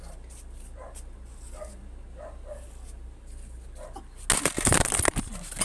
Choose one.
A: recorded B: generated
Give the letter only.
A